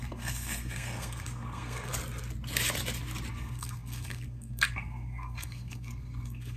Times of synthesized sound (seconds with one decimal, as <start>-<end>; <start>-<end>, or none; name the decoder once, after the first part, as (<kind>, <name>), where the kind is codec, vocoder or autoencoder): 0.0-1.9 (codec, SNAC); 3.3-6.6